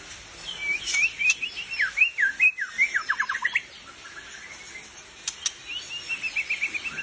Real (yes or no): yes